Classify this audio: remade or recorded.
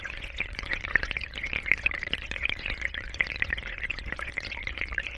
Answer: remade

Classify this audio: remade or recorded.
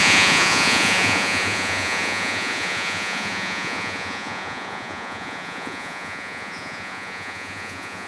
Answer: remade